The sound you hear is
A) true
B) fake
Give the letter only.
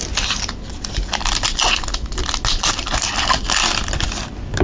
A